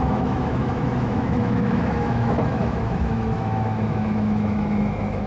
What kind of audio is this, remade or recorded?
remade